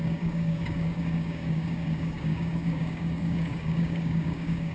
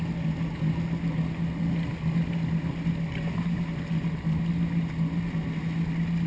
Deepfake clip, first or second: first